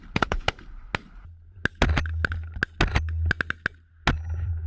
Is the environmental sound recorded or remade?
recorded